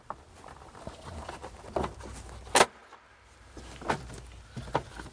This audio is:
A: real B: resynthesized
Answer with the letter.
A